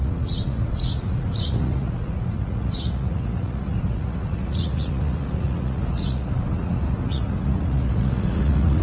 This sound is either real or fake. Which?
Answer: fake